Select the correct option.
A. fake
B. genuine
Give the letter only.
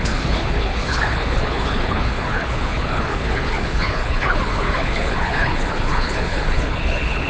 A